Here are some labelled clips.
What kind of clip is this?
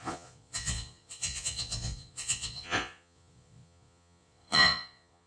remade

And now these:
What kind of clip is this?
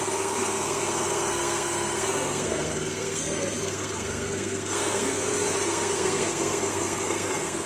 remade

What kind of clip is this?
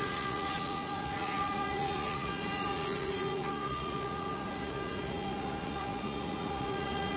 remade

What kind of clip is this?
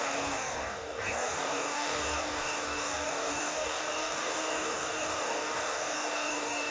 remade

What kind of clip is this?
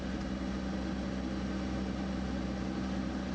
recorded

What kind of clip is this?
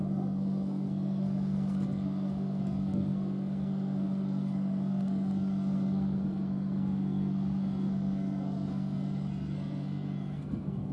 remade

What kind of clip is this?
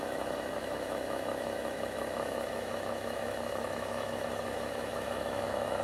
remade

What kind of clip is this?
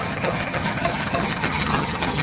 remade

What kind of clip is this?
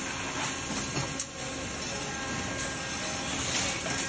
recorded